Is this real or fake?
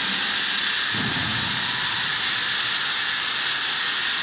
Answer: real